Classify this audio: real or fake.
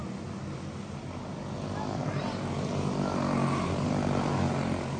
real